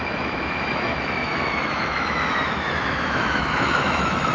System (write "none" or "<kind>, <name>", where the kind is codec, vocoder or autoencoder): autoencoder, DAC-VAE